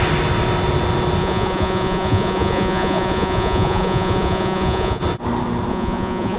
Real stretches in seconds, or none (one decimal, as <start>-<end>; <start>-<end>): 0.0-1.2; 5.0-5.7